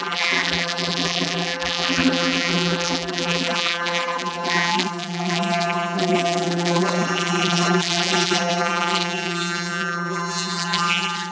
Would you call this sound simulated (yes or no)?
yes